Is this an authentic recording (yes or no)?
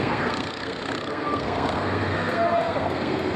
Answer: no